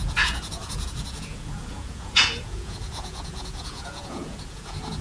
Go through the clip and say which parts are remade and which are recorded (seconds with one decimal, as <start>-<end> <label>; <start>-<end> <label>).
0.0-5.0 remade

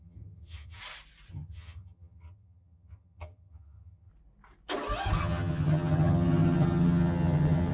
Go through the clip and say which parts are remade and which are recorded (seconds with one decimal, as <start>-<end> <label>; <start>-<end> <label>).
0.0-0.8 remade; 0.8-1.3 recorded; 1.3-4.1 remade; 4.1-5.2 recorded; 5.2-7.7 remade

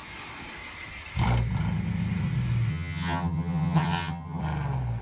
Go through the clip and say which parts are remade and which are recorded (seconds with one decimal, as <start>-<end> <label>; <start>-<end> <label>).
0.0-2.7 recorded; 2.7-4.4 remade; 4.4-5.0 recorded

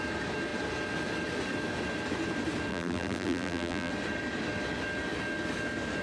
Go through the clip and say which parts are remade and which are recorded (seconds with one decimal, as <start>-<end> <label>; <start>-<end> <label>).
0.0-2.7 recorded; 2.7-3.9 remade; 3.9-6.0 recorded

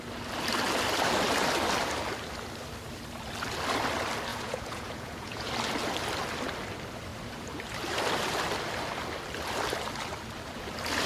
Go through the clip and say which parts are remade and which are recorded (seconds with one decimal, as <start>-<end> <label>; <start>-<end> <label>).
0.0-4.3 recorded; 4.3-5.5 remade; 5.5-11.1 recorded